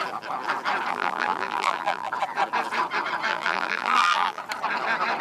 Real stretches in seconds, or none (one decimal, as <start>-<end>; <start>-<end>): 0.0-0.9; 2.1-3.3; 4.4-5.2